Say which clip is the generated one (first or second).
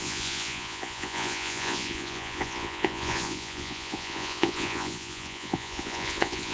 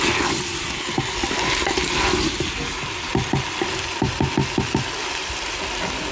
first